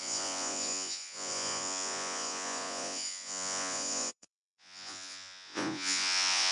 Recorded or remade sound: remade